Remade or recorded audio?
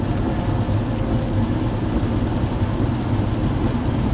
recorded